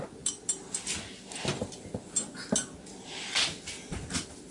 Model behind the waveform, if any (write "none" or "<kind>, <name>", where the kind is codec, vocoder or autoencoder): none